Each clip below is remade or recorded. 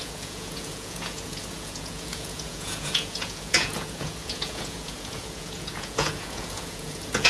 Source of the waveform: remade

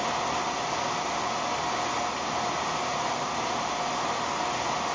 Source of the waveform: recorded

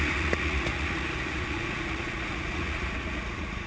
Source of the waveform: remade